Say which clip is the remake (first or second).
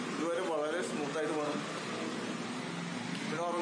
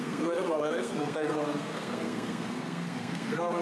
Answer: second